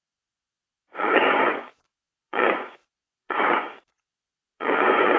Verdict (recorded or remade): remade